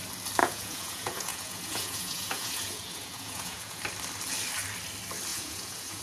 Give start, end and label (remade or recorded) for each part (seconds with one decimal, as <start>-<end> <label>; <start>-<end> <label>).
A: 0.0-0.4 recorded; 0.4-3.8 remade; 3.8-5.3 recorded; 5.3-6.0 remade